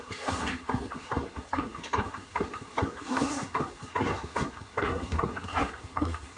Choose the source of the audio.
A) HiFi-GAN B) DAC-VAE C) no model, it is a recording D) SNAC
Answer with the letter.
D